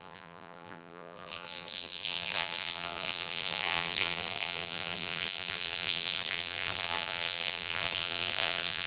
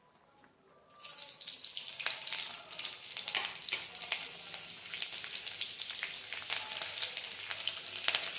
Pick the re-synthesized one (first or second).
first